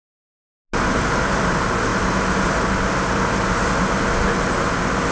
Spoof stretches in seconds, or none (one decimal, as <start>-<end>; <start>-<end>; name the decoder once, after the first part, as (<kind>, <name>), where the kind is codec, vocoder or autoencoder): none